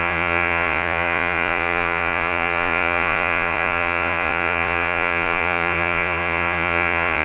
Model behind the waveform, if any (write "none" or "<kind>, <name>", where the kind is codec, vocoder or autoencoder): vocoder, Vocos